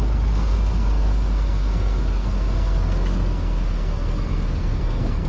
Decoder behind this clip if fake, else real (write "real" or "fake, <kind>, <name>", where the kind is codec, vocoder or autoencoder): fake, codec, SNAC